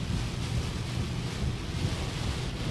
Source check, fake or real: real